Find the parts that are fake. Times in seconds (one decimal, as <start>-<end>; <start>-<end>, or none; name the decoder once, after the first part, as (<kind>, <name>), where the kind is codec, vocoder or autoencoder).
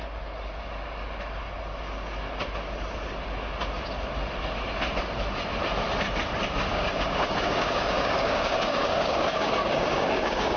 6.7-10.6 (codec, DAC)